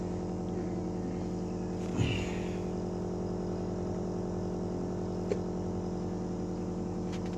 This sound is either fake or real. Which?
real